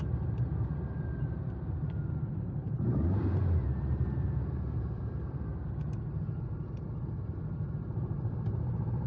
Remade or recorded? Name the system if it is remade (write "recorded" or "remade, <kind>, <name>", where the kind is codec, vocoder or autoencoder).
remade, vocoder, BigVGAN v2